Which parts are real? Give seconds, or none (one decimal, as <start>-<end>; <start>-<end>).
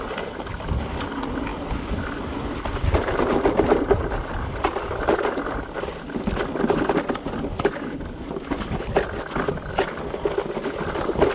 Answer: 0.0-11.3